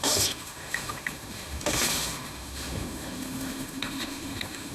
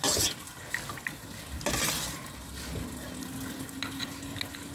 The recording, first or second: second